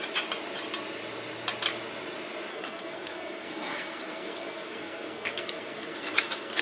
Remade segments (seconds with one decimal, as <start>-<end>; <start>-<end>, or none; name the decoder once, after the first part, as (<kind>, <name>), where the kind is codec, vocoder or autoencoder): 2.5-6.6 (codec, SNAC)